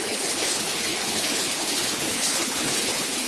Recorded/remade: remade